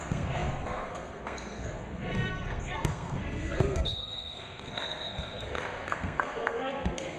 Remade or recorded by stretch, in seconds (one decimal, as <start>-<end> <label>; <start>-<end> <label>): 0.0-7.2 remade